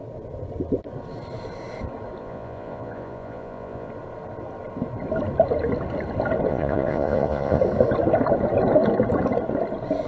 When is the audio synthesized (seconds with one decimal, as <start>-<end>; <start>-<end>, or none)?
2.2-3.9; 6.5-7.6